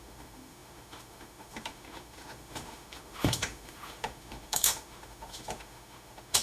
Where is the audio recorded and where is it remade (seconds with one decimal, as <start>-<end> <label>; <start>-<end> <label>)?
0.0-6.4 remade